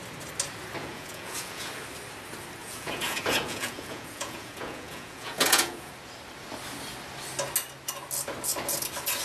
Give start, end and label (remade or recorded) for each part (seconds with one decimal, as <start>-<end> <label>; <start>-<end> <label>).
0.0-0.8 recorded; 0.8-1.7 remade; 1.7-2.6 recorded; 2.6-5.9 remade; 5.9-9.2 recorded